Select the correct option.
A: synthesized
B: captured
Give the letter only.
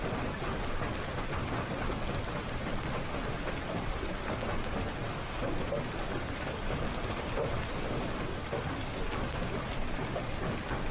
B